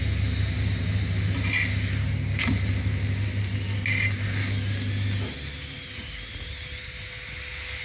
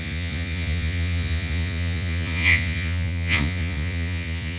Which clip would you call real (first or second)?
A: first